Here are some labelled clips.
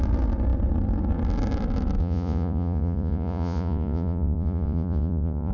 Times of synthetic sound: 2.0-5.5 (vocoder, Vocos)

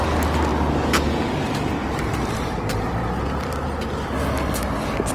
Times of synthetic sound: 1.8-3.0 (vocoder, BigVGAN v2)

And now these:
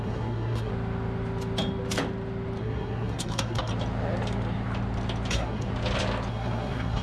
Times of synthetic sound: 0.0-0.7 (codec, SNAC); 2.6-3.7; 5.3-5.7; 6.3-7.0